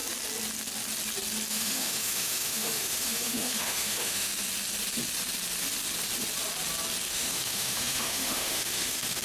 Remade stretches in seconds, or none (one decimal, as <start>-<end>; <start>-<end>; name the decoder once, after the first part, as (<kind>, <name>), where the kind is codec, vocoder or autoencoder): 1.5-4.3 (autoencoder, DAC-VAE); 7.1-9.2